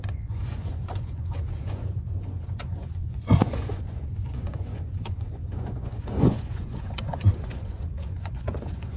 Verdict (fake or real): fake